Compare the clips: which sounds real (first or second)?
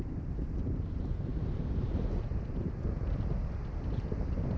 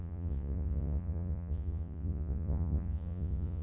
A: first